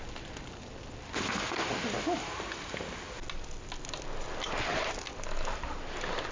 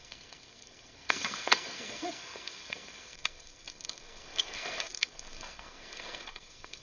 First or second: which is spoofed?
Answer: second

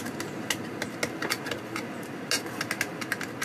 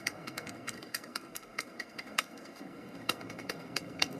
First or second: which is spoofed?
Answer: second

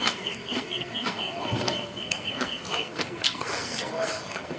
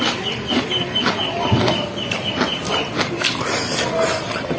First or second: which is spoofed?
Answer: first